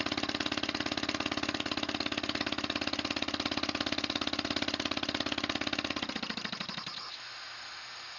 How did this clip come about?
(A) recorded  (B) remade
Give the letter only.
A